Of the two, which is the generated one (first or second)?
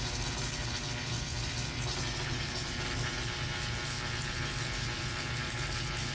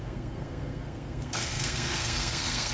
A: second